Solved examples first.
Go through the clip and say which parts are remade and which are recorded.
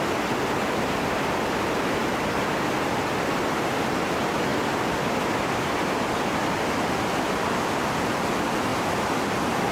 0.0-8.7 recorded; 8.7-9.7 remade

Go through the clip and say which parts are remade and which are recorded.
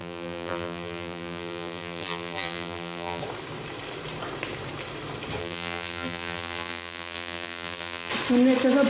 0.0-3.2 remade; 3.2-5.4 recorded; 5.4-8.1 remade; 8.1-8.9 recorded